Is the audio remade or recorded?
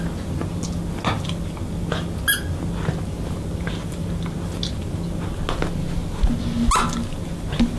recorded